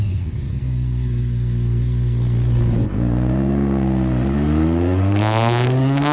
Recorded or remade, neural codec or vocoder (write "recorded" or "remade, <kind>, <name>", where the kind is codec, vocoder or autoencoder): remade, codec, SNAC